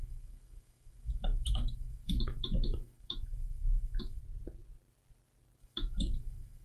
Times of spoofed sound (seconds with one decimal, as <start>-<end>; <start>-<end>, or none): 0.0-4.2; 5.6-6.6